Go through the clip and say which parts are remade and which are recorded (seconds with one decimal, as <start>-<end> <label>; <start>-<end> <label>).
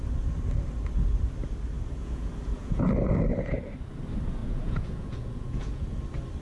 0.0-2.0 recorded; 2.0-2.8 remade; 2.8-4.4 recorded; 4.4-6.0 remade; 6.0-6.4 recorded